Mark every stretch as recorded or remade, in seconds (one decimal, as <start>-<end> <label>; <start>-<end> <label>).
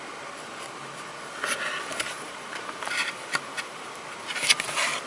0.0-1.9 recorded; 1.9-4.0 remade; 4.0-5.1 recorded